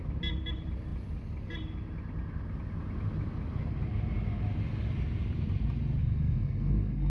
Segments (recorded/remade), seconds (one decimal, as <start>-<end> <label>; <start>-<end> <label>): 0.0-6.0 recorded; 6.0-7.1 remade